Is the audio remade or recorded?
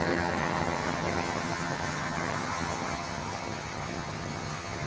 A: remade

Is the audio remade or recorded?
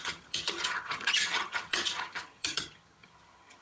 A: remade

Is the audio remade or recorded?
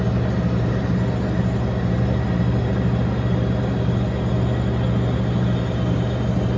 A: recorded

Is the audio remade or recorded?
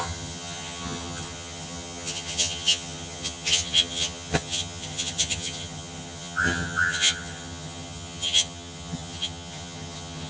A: remade